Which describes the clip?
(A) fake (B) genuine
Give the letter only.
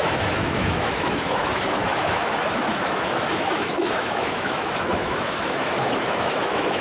A